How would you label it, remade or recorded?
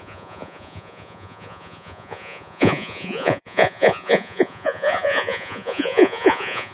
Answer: remade